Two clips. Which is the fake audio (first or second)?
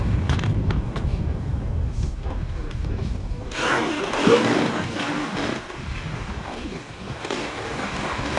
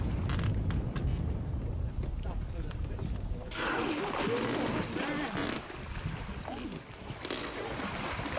first